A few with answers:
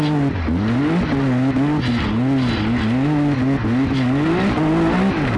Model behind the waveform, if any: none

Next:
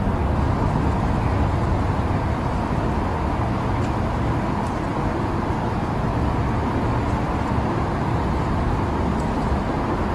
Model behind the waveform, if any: none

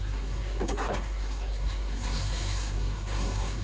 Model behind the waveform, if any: codec, SNAC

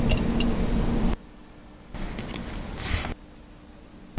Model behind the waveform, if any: none